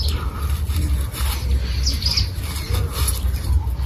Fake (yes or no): no